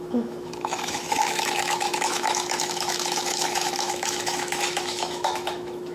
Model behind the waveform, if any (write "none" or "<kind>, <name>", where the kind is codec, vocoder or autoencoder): autoencoder, DAC-VAE